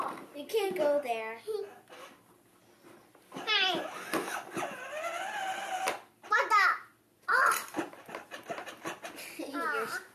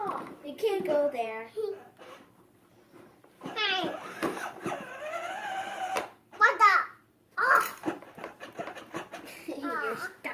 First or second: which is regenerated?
second